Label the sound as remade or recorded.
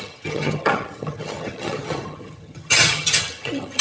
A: remade